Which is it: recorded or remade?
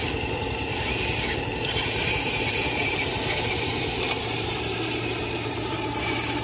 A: remade